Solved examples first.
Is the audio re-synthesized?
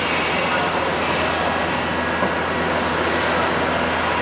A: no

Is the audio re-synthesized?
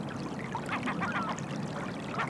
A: no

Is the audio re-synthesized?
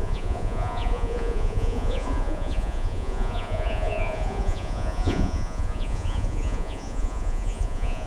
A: yes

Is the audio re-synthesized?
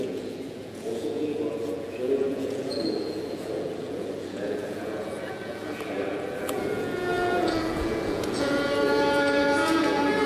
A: yes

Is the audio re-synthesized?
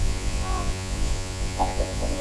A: yes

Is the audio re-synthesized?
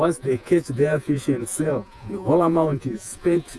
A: yes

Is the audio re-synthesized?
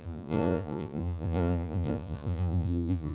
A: yes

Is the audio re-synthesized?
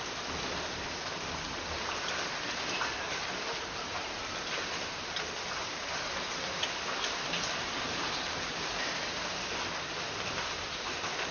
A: no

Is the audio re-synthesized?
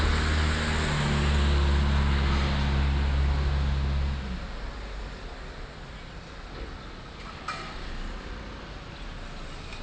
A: no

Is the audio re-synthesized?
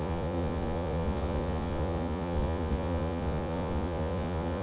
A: yes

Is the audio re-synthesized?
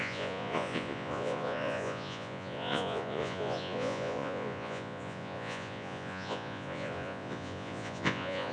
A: yes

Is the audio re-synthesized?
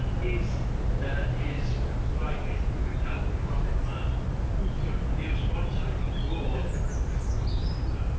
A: no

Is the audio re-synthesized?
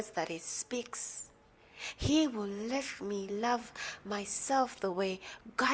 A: yes